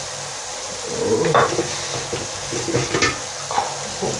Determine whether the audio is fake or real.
real